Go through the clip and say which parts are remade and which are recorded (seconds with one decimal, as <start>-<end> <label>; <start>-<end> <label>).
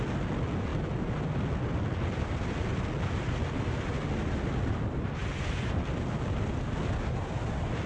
0.0-7.9 recorded